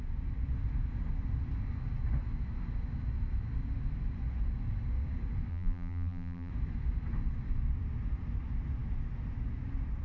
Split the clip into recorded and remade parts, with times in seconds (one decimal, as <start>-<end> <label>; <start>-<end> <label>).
0.0-5.5 recorded; 5.5-6.5 remade; 6.5-10.0 recorded